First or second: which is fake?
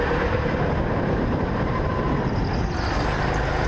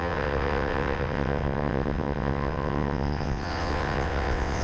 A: second